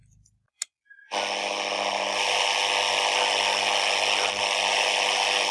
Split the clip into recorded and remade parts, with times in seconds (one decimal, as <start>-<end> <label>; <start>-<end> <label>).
0.0-5.5 recorded